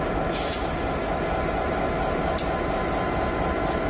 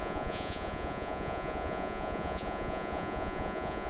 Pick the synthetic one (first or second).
second